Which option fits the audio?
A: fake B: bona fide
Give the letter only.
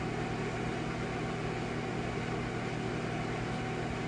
B